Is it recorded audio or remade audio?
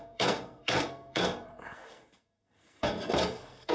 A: remade